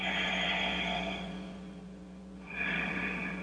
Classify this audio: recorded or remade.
remade